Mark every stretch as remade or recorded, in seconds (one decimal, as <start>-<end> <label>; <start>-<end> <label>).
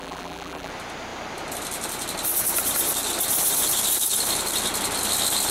0.0-0.7 remade; 0.7-5.5 recorded